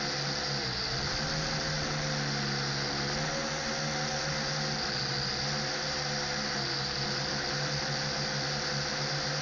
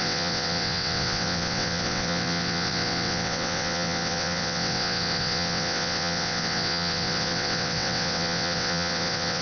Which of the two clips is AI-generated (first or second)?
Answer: second